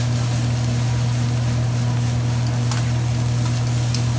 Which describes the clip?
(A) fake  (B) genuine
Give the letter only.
B